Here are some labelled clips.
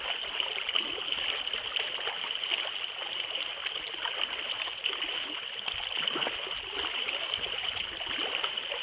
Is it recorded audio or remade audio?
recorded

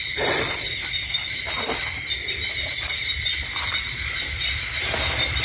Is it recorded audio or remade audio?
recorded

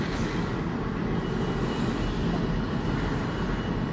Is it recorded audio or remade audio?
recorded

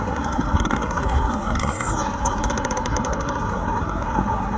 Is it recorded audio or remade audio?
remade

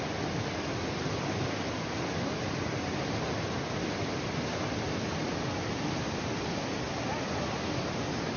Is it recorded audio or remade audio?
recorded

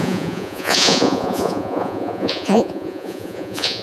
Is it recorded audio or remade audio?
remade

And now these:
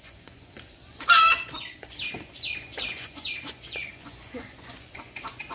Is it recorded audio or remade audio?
remade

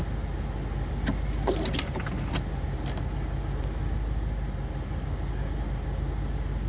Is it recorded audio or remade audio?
recorded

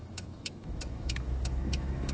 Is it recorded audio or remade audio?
remade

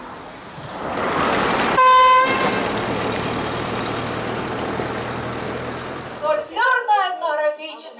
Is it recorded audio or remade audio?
recorded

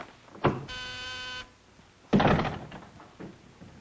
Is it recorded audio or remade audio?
recorded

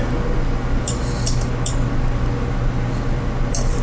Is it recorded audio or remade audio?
recorded